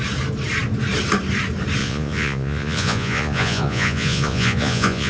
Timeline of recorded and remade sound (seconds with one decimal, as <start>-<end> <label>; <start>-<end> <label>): 0.0-1.8 recorded; 1.8-5.1 remade